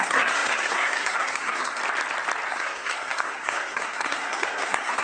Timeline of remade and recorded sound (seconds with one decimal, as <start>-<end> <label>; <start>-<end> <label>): 0.0-1.8 remade; 1.8-2.5 recorded; 2.5-5.0 remade